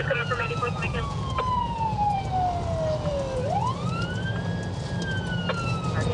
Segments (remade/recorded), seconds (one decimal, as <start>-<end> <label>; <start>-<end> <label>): 0.0-2.2 remade; 2.2-6.1 recorded